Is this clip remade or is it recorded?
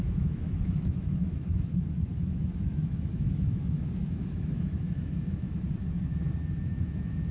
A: remade